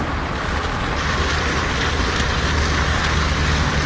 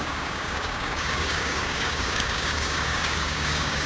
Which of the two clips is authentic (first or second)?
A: first